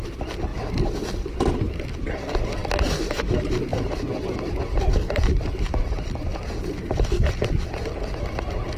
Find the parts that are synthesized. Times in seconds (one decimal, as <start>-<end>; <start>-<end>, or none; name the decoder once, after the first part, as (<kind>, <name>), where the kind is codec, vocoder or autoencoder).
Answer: 0.5-1.4 (vocoder, BigVGAN v2); 2.6-3.2